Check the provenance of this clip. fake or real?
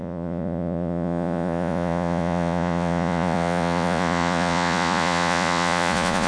fake